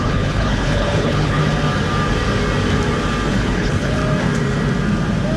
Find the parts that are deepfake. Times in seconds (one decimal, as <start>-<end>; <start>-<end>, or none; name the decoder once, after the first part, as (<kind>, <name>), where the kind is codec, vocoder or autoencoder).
0.0-1.4 (codec, HILCodec); 3.3-4.0